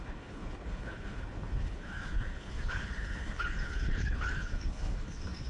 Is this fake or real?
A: fake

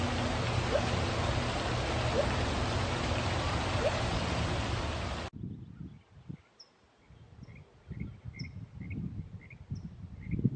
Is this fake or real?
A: real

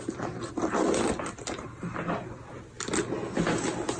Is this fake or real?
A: real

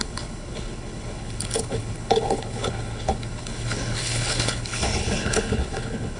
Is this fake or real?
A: fake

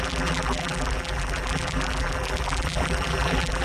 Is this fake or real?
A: fake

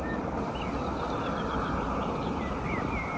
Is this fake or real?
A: real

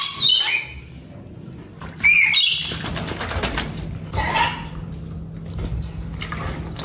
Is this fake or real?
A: real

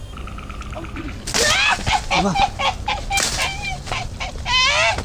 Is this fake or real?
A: real